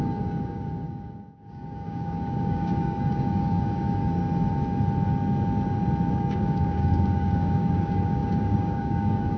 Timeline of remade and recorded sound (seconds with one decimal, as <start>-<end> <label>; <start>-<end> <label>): 0.0-4.2 remade; 4.2-6.1 recorded; 6.1-9.4 remade